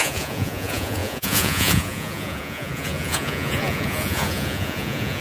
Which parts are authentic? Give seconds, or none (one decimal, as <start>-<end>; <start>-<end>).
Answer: none